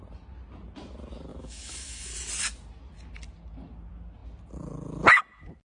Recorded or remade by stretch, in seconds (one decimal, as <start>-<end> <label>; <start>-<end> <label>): 0.0-1.3 recorded; 1.3-2.1 remade; 2.1-5.7 recorded